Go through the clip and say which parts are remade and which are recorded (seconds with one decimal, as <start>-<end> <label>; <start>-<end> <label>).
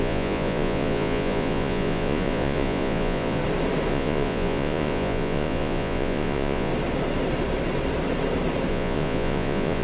0.0-3.4 remade; 3.4-3.9 recorded; 3.9-6.7 remade; 6.7-8.7 recorded; 8.7-9.8 remade